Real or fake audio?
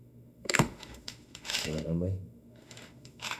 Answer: fake